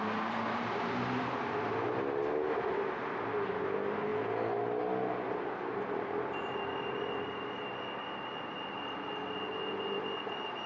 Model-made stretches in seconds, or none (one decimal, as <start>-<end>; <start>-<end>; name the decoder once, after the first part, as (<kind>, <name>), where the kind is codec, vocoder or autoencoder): none